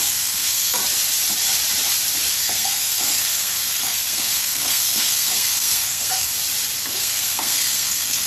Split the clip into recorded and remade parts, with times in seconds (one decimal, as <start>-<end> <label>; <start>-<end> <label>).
0.0-0.8 remade; 0.8-2.3 recorded; 2.3-6.3 remade; 6.3-6.8 recorded; 6.8-8.3 remade